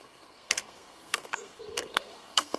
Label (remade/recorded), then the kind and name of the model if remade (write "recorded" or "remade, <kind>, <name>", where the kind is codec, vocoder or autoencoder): remade, codec, SNAC